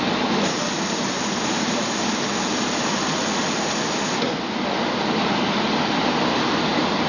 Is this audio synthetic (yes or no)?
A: no